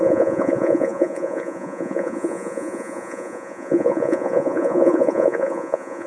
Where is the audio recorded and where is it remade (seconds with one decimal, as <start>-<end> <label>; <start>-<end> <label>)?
0.0-6.1 remade

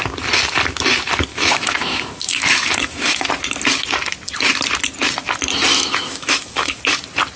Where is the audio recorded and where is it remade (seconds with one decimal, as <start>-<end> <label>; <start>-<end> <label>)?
0.0-1.3 recorded; 1.3-3.3 remade; 3.3-5.7 recorded; 5.7-6.8 remade; 6.8-7.4 recorded

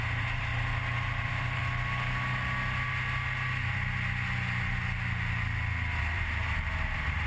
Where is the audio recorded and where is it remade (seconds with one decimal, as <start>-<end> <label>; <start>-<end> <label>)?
0.0-0.5 remade; 0.5-1.1 recorded; 1.1-1.6 remade; 1.6-6.0 recorded; 6.0-7.3 remade

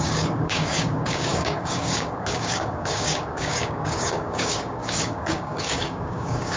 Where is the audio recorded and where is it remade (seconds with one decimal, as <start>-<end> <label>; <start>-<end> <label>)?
0.0-6.6 remade

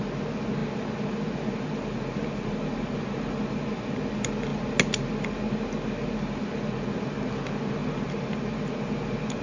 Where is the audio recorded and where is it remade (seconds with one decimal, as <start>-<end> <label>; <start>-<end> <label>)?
0.0-9.4 recorded